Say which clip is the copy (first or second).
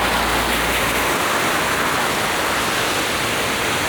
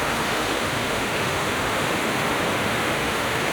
second